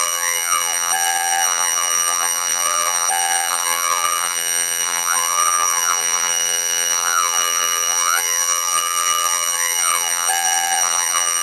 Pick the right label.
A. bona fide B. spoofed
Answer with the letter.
B